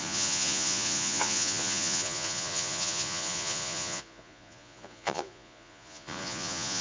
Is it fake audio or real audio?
fake